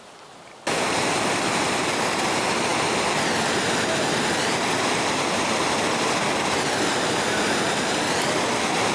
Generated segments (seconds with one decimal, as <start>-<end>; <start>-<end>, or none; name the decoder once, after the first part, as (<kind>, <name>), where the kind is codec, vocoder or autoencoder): none